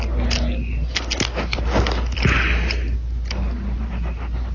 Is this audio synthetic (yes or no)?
no